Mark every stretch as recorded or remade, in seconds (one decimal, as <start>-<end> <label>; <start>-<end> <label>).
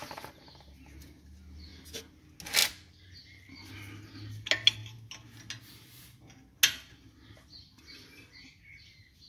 0.0-9.3 recorded